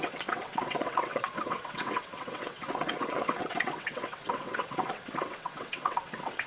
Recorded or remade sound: remade